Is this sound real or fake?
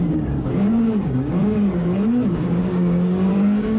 fake